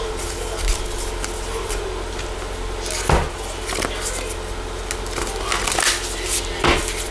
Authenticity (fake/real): real